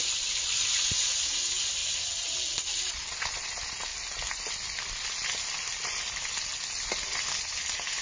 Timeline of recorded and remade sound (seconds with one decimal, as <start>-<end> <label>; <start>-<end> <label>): 0.0-8.0 recorded